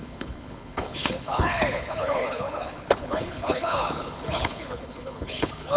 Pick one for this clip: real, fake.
fake